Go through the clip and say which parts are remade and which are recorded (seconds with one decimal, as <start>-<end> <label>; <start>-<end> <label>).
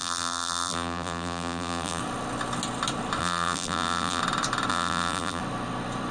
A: 0.0-2.0 remade; 2.0-3.2 recorded; 3.2-4.2 remade; 4.2-4.7 recorded; 4.7-5.4 remade; 5.4-6.1 recorded